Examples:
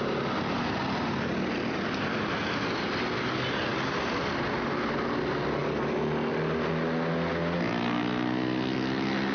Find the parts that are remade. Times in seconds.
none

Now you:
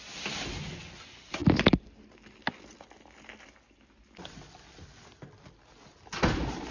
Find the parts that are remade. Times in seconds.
none

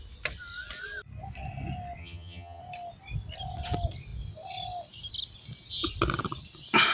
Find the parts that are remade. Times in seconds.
2.0-2.6

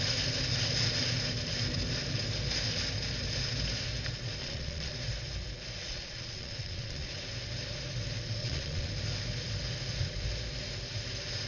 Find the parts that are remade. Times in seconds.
4.4-4.9; 5.8-7.1; 8.4-8.9

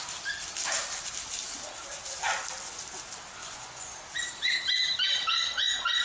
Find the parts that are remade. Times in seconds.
3.4-3.9

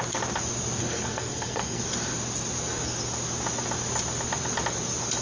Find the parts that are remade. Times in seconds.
0.8-1.8